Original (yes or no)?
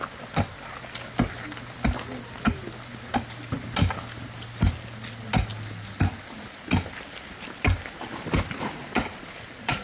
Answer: yes